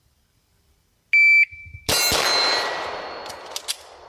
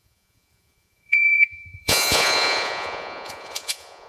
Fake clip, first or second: second